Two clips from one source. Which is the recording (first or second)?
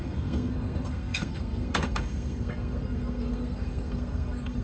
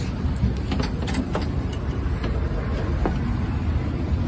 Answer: second